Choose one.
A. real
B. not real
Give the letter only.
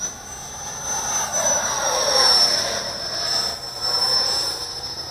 B